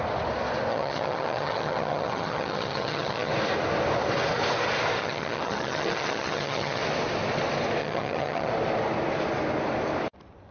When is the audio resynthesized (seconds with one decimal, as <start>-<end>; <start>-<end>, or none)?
0.7-3.3; 5.0-6.8; 7.8-8.5